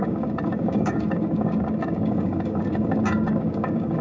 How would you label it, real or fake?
fake